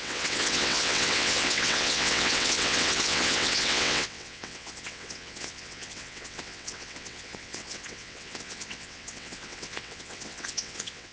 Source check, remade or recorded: remade